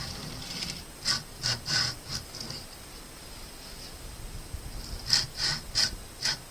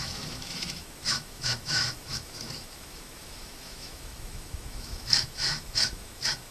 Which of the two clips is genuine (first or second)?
first